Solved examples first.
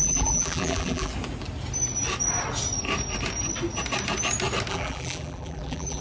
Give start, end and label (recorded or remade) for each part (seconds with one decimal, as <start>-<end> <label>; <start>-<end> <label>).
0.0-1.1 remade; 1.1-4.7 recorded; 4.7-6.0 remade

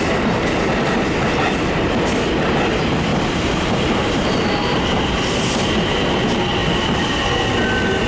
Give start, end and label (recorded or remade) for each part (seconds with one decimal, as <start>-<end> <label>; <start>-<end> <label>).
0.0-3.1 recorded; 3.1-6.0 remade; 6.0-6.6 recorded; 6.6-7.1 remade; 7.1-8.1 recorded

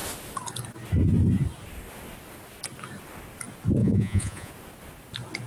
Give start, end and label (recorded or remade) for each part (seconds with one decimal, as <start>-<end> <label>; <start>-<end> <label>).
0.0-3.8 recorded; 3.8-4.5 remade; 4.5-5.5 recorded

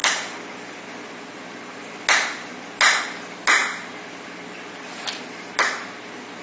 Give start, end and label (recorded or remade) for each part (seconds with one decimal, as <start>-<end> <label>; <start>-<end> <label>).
0.0-6.4 recorded

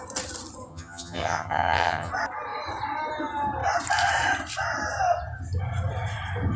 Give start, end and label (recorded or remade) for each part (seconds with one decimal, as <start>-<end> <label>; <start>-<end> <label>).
0.0-0.7 recorded; 0.7-2.1 remade; 2.1-6.6 recorded

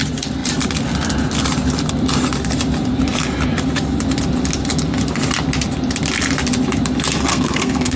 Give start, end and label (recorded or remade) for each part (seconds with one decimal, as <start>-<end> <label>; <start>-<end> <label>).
0.0-7.3 recorded; 7.3-8.0 remade

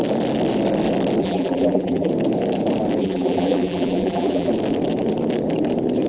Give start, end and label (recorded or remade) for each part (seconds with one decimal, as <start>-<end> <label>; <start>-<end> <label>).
0.0-1.2 recorded; 1.2-2.1 remade; 2.1-3.0 recorded; 3.0-4.5 remade; 4.5-6.1 recorded